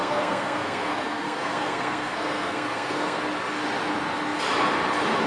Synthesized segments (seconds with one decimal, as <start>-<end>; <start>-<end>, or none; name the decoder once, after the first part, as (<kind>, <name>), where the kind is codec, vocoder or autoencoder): 0.0-3.2 (codec, SNAC)